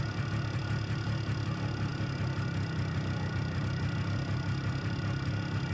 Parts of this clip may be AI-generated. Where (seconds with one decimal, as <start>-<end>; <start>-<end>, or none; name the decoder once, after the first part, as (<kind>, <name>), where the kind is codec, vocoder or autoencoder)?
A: none

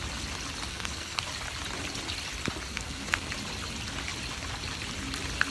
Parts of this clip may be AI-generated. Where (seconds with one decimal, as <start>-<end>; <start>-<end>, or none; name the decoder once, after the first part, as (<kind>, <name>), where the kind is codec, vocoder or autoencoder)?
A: 0.7-1.2 (codec, SNAC); 2.7-3.3

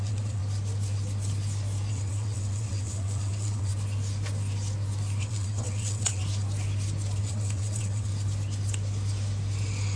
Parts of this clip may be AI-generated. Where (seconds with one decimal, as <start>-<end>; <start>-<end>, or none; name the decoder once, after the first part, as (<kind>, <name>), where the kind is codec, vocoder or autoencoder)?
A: 0.0-0.4 (vocoder, WaveNeXt); 1.9-3.7; 5.2-6.2; 7.2-8.1

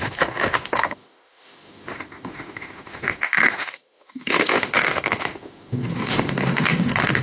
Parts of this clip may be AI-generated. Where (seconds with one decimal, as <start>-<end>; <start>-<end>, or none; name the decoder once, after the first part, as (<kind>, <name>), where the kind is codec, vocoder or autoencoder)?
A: 0.0-7.2 (autoencoder, DAC-VAE)

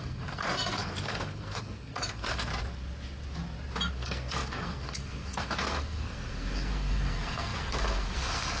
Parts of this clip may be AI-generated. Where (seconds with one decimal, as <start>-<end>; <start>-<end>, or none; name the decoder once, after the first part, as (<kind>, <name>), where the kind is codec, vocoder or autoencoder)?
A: 0.0-2.5 (codec, SNAC); 3.9-8.6

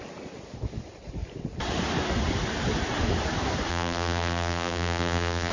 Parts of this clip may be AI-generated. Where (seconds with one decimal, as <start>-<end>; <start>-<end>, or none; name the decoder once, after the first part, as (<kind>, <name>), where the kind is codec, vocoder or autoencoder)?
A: 3.7-5.5 (vocoder, BigVGAN v2)

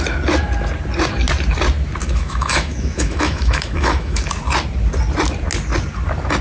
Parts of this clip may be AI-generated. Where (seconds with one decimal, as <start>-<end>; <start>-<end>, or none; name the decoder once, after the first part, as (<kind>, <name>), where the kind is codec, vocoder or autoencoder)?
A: 2.0-4.2 (autoencoder, DAC-VAE)